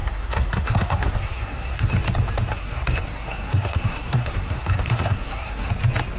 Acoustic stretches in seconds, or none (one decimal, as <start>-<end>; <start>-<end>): 1.9-2.5; 5.7-6.2